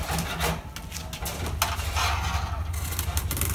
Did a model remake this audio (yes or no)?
no